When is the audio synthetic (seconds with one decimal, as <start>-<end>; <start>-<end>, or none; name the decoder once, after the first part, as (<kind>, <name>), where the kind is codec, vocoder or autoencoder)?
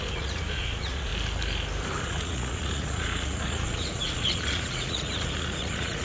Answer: 0.0-1.1 (vocoder, Vocos); 2.0-6.0